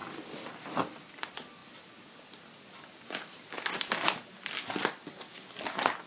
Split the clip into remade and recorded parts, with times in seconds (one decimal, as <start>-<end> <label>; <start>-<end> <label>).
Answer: 0.0-6.1 recorded